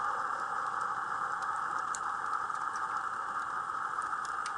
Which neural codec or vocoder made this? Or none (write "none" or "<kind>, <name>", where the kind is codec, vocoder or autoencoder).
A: none